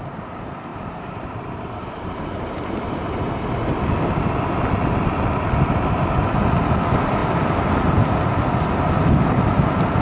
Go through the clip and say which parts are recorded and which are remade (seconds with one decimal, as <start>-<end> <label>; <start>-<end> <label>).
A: 0.0-0.7 recorded; 0.7-3.8 remade; 3.8-10.0 recorded